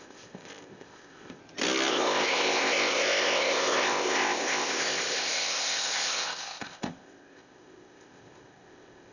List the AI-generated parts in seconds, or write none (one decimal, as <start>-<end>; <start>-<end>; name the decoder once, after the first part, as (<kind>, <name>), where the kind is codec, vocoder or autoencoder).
0.0-1.4 (codec, ZipCodec); 1.9-9.1